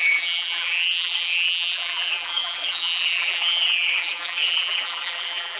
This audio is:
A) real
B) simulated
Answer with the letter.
B